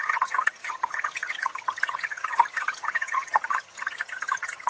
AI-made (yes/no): yes